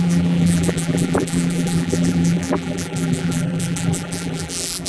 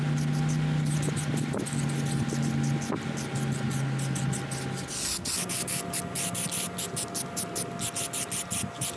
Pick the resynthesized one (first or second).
first